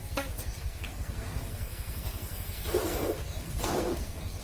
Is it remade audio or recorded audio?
remade